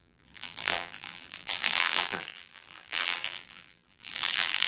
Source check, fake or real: fake